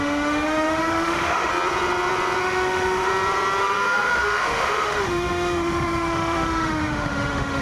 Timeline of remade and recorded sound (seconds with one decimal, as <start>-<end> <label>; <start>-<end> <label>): 0.0-1.5 remade; 1.5-2.4 recorded; 2.4-3.1 remade; 3.1-3.6 recorded; 3.6-7.6 remade